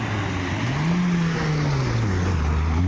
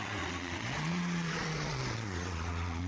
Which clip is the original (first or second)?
first